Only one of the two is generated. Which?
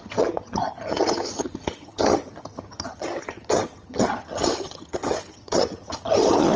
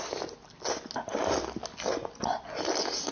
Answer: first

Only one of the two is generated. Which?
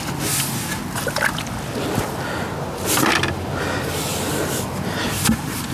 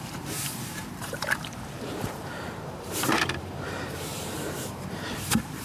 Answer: second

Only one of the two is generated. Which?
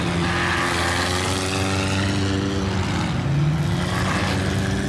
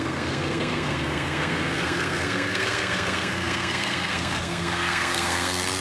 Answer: second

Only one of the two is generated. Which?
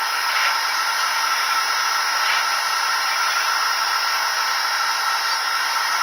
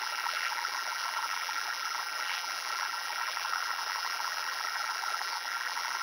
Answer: second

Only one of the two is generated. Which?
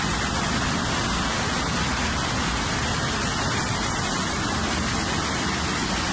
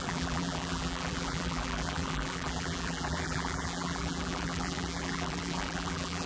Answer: second